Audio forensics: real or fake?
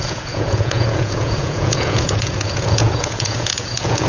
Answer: fake